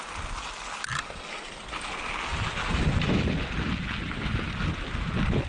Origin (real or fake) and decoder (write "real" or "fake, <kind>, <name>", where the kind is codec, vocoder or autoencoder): real